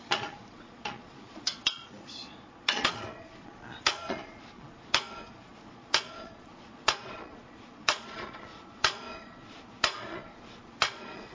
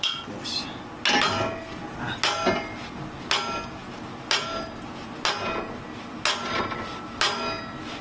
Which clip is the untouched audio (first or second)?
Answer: second